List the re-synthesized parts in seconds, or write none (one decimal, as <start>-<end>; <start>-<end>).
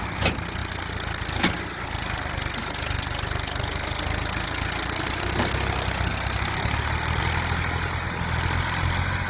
none